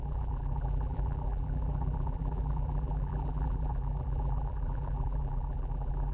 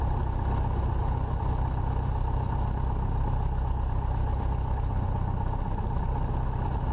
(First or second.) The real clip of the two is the second